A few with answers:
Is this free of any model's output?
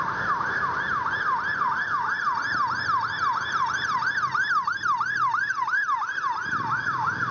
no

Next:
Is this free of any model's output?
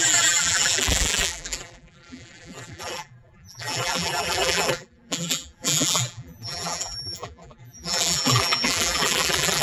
no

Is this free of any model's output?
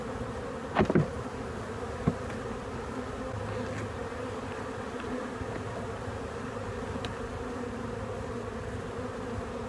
no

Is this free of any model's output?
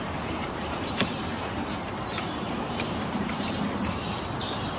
no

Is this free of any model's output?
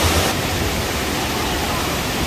no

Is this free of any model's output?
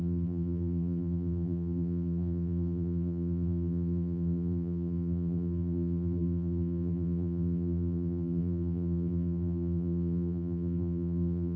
no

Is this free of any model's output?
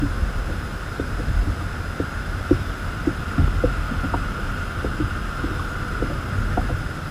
yes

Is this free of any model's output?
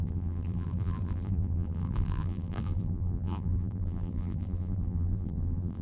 no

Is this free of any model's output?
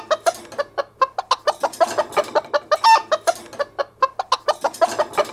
yes